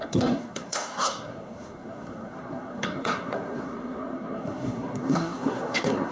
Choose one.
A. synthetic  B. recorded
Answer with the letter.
A